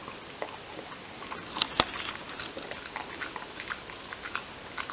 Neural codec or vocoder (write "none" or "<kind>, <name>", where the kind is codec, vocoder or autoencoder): none